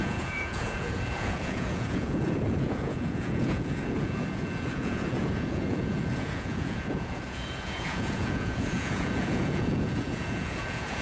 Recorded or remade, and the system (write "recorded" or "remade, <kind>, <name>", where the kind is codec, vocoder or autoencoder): remade, vocoder, Vocos